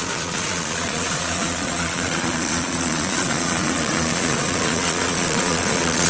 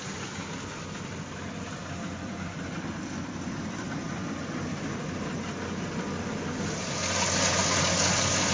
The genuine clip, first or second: second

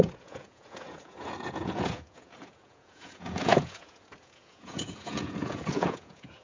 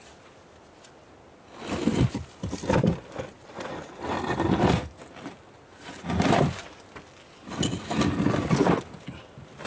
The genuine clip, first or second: second